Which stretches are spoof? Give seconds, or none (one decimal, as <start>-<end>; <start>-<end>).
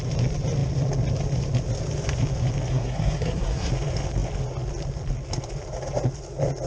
2.7-3.7